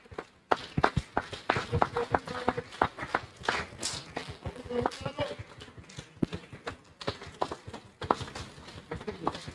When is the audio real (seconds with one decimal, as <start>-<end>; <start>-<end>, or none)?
0.0-4.2; 5.2-9.5